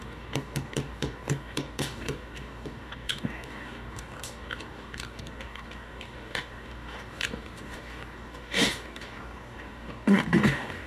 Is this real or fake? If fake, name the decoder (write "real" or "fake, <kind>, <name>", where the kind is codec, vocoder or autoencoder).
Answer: fake, codec, DAC